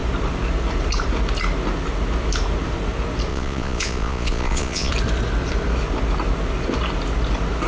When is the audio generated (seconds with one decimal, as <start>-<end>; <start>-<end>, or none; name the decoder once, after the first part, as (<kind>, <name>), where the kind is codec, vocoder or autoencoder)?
3.3-4.9 (vocoder, Vocos)